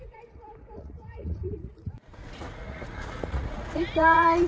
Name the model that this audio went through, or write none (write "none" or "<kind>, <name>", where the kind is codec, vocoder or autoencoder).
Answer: vocoder, Vocos